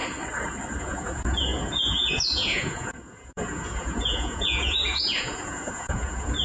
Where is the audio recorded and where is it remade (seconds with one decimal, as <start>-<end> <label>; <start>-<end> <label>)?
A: 0.0-0.8 recorded; 0.8-6.4 remade